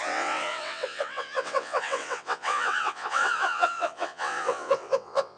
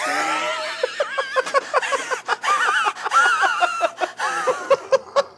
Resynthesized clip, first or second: first